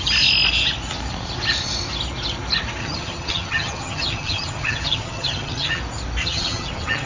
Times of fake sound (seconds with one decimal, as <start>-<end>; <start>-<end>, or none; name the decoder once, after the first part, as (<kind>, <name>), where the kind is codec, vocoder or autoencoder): 2.8-5.8 (vocoder, HiFi-GAN); 6.2-7.1

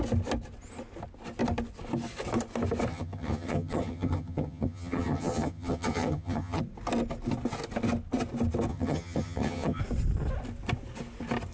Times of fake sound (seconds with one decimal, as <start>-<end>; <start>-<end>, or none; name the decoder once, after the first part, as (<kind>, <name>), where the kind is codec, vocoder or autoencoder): 2.9-6.6 (vocoder, HiFi-GAN); 8.7-9.8

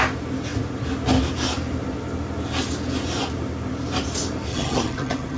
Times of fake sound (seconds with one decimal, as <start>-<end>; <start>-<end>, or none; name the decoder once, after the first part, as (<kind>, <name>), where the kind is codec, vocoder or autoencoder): 4.5-5.4 (vocoder, HiFi-GAN)

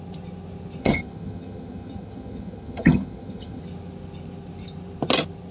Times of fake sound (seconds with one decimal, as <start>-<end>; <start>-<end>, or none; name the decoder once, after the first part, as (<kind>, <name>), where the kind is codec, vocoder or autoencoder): 0.8-3.6 (vocoder, HiFi-GAN)